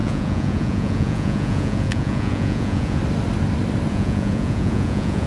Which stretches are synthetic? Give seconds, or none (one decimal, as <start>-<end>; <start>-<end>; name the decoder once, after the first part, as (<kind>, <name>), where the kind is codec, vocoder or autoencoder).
0.0-3.0 (vocoder, Vocos); 3.9-5.3